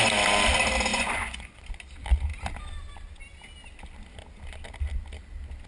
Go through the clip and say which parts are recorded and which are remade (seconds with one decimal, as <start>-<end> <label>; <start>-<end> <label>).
0.0-0.9 recorded; 0.9-1.6 remade; 1.6-5.7 recorded